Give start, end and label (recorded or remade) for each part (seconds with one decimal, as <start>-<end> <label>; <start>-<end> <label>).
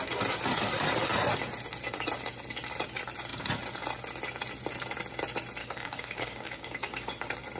0.0-5.6 recorded; 5.6-7.1 remade; 7.1-7.6 recorded